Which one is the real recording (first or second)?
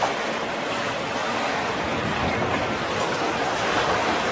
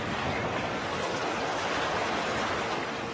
second